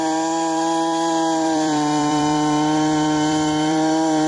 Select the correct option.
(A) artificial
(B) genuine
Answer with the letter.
A